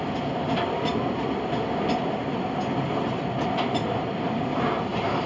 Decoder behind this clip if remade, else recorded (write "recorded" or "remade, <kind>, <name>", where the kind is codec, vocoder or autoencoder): recorded